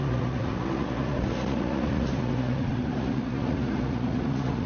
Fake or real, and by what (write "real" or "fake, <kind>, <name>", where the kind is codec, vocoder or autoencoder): fake, vocoder, Vocos